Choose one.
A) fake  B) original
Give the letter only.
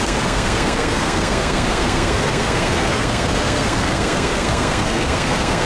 A